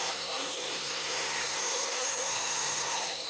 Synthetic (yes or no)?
yes